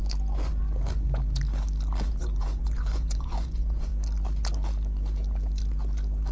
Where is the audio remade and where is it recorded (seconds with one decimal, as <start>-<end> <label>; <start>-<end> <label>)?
0.0-2.1 recorded; 2.1-3.9 remade; 3.9-6.3 recorded